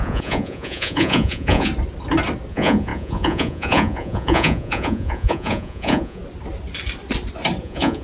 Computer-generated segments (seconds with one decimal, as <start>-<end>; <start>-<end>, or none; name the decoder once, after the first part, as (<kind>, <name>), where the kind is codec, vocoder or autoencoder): 0.0-1.7 (vocoder, Vocos); 2.5-6.2; 7.6-8.0